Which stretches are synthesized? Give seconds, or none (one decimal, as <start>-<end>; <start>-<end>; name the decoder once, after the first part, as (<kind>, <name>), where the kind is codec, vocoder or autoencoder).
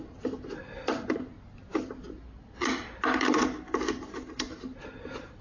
none